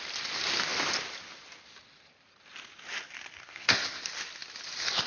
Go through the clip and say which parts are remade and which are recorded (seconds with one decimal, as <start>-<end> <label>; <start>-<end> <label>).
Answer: 0.0-3.4 recorded; 3.4-4.0 remade; 4.0-5.1 recorded